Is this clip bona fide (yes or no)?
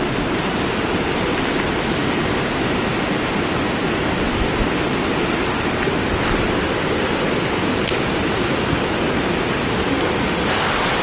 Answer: yes